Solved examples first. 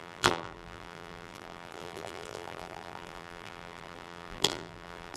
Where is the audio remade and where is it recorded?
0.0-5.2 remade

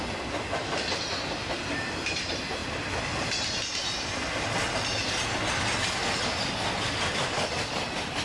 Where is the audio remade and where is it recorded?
0.0-8.2 recorded

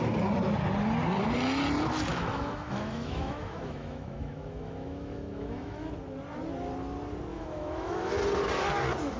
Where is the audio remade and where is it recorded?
0.0-2.1 recorded; 2.1-5.9 remade; 5.9-7.3 recorded; 7.3-8.1 remade; 8.1-9.2 recorded